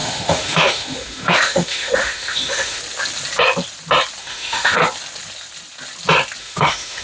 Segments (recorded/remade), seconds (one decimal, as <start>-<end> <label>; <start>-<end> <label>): 0.0-2.8 remade; 2.8-4.2 recorded; 4.2-4.8 remade; 4.8-6.4 recorded; 6.4-7.0 remade